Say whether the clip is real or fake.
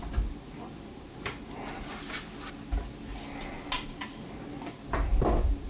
real